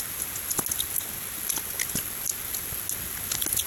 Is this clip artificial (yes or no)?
no